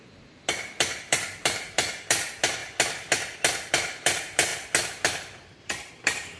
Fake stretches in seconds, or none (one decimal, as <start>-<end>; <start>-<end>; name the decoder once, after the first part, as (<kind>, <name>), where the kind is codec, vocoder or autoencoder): 0.0-2.6 (vocoder, BigVGAN v2); 3.7-4.5; 5.0-6.4